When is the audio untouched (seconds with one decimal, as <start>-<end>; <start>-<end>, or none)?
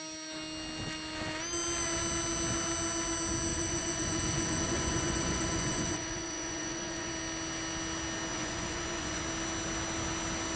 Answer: 0.0-3.5; 7.1-8.3; 9.2-10.6